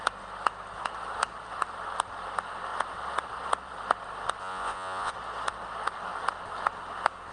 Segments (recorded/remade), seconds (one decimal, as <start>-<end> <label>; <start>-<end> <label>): 0.0-4.4 recorded; 4.4-5.1 remade; 5.1-7.3 recorded

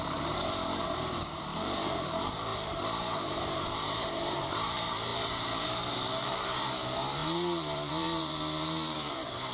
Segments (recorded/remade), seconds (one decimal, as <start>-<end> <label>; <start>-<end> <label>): 0.0-9.5 remade

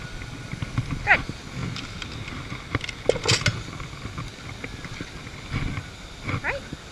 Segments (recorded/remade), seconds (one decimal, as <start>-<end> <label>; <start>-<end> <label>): 0.0-6.9 recorded

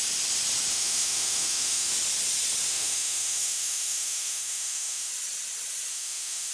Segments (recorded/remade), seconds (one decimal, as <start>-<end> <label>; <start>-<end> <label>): 0.0-0.7 recorded; 0.7-1.9 remade; 1.9-2.7 recorded; 2.7-5.1 remade; 5.1-5.9 recorded; 5.9-6.5 remade

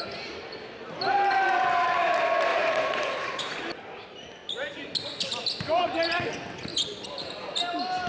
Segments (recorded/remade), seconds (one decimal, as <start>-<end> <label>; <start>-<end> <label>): 0.0-2.5 recorded; 2.5-3.6 remade; 3.6-8.1 recorded

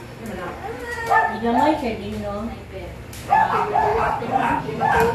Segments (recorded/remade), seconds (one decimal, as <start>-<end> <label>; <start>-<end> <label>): 0.0-3.9 recorded; 3.9-4.6 remade; 4.6-5.1 recorded

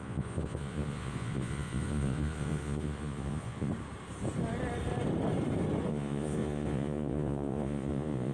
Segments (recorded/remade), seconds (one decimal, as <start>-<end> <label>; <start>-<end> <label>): 0.0-3.7 remade; 3.7-5.9 recorded; 5.9-8.3 remade